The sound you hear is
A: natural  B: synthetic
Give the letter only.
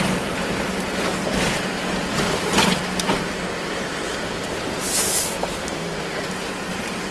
A